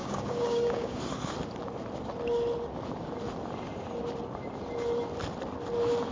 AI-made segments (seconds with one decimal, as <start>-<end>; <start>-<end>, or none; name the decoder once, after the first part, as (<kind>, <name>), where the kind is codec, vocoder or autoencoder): 0.0-1.0 (codec, DAC)